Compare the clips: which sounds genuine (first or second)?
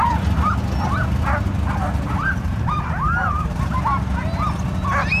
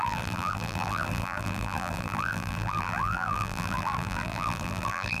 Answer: first